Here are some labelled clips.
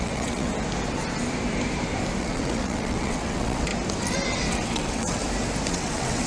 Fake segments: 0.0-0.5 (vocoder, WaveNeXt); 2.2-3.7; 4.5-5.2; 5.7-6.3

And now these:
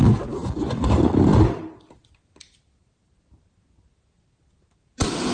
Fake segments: none

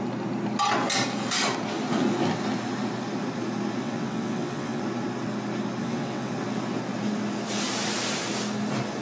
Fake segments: 3.8-4.8 (vocoder, WaveNeXt); 5.8-6.3

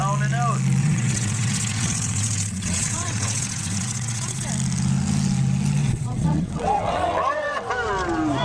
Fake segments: 0.8-4.5 (vocoder, WaveNeXt); 5.8-7.7